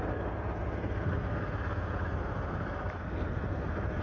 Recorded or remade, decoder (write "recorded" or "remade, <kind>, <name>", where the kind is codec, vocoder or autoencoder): recorded